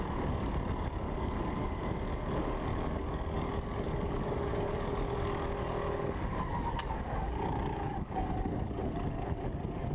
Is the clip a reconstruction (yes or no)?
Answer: yes